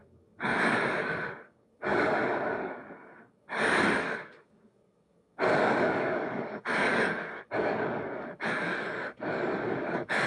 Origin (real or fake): fake